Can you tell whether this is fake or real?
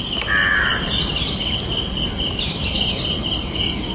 fake